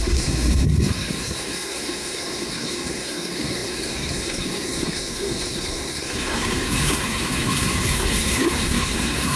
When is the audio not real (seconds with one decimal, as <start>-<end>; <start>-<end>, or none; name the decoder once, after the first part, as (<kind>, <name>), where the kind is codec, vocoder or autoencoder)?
0.0-9.4 (codec, SNAC)